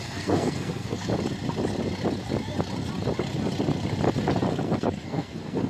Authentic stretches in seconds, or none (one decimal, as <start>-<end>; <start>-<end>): 1.1-4.5